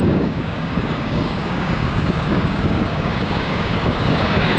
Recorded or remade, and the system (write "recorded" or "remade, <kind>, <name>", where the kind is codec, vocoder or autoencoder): remade, codec, DAC